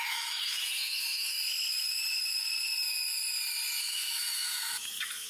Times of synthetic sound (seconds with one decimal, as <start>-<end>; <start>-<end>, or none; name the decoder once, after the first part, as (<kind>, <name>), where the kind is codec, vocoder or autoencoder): 0.0-1.4 (autoencoder, DAC-VAE); 3.8-5.3

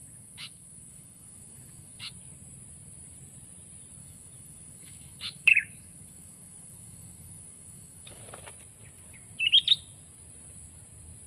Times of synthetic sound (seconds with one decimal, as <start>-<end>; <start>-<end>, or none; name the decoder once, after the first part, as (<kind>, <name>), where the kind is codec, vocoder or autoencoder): 0.0-2.1 (autoencoder, DAC-VAE); 4.0-8.2

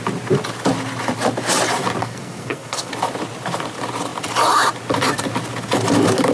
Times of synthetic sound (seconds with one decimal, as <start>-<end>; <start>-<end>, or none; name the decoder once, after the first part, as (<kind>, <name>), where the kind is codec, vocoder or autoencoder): 2.0-2.9 (codec, SNAC)

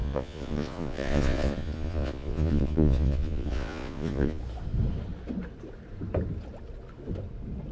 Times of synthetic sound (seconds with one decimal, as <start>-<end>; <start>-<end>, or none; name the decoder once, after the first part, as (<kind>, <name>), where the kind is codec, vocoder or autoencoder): 0.0-4.4 (vocoder, Vocos)

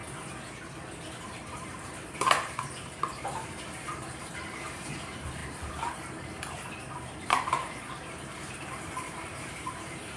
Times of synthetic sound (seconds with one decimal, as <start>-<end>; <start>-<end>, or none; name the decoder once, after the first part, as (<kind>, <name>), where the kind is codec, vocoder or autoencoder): 1.0-10.2 (vocoder, BigVGAN v2)

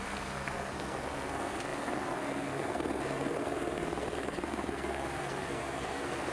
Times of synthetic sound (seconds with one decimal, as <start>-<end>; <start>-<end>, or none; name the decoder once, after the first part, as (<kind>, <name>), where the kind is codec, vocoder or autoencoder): 0.0-6.3 (codec, SNAC)

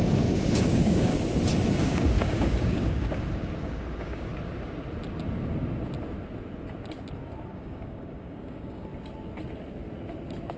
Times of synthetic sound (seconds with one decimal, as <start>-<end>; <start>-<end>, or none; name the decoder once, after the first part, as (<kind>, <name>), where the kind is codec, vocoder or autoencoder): 0.0-1.1 (codec, DAC); 1.8-4.3; 7.5-8.9